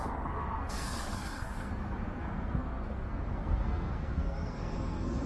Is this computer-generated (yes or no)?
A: yes